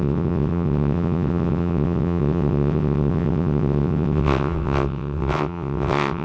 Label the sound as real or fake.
fake